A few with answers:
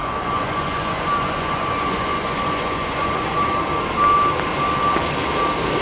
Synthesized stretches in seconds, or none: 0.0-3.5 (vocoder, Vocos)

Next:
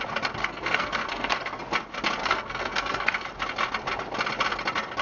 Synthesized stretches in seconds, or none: 0.4-1.6 (codec, SNAC); 2.2-3.3

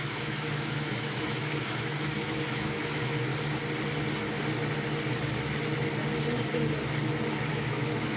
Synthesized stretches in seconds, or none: 0.0-3.3 (autoencoder, DAC-VAE); 7.5-8.2

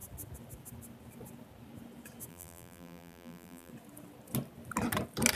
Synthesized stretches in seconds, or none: 2.3-3.7 (vocoder, BigVGAN v2)

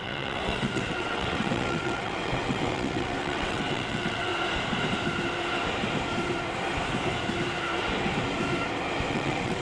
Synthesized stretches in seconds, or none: 0.0-4.3 (vocoder, WaveNeXt); 9.1-9.6

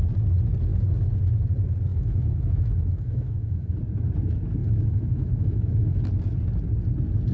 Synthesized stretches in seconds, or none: 1.9-3.7 (autoencoder, DAC-VAE); 4.6-6.0